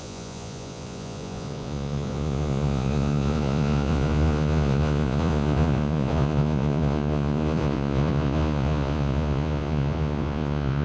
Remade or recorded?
remade